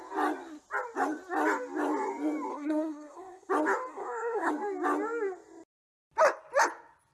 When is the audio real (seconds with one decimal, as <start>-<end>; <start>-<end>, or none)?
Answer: 0.0-2.5; 3.5-3.9; 4.5-7.1